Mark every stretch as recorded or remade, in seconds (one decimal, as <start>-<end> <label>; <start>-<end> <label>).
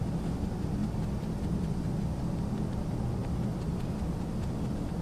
0.0-0.8 recorded; 0.8-2.0 remade; 2.0-3.2 recorded; 3.2-3.8 remade; 3.8-5.0 recorded